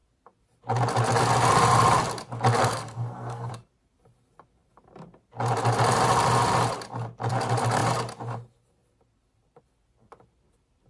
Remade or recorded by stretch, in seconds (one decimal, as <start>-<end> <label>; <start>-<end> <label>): 0.0-2.6 recorded; 2.6-3.5 remade; 3.5-10.9 recorded

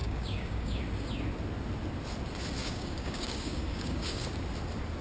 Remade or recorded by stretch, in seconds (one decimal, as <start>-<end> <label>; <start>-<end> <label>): 0.0-0.8 remade; 0.8-2.6 recorded; 2.6-4.3 remade; 4.3-5.0 recorded